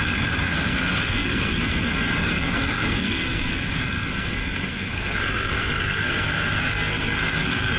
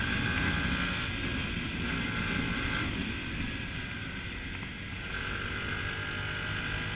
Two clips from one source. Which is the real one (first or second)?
second